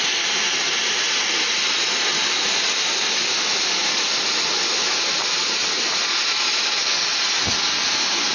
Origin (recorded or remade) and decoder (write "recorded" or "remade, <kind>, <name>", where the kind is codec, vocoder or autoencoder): recorded